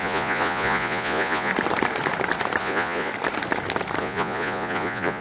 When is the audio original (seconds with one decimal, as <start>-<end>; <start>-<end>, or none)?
1.5-2.6; 3.1-4.0